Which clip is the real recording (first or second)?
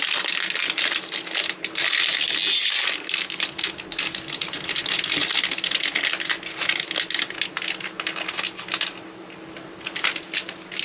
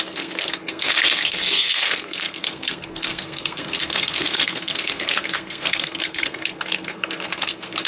first